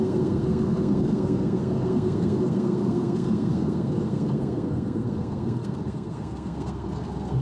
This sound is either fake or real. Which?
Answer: fake